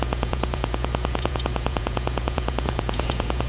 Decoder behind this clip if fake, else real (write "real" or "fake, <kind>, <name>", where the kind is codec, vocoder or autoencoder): fake, vocoder, Vocos